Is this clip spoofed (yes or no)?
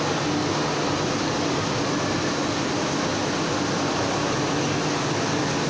no